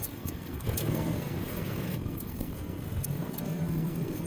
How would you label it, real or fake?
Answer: fake